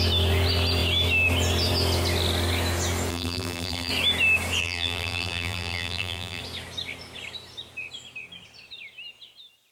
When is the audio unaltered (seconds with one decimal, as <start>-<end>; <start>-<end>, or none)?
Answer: 0.0-3.1; 3.9-4.6; 6.4-9.7